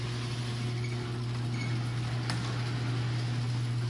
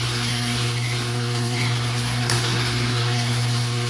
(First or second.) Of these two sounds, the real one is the first